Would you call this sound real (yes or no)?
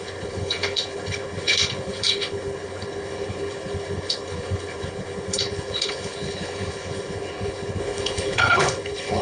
no